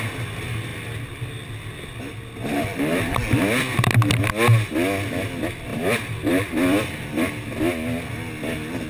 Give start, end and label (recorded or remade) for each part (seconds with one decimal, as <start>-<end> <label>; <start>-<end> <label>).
0.0-0.7 recorded; 0.7-2.0 remade; 2.0-5.7 recorded; 5.7-7.3 remade; 7.3-8.9 recorded